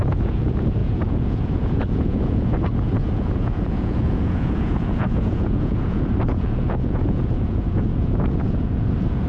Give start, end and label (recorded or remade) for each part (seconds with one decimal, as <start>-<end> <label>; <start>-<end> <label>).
0.0-9.3 remade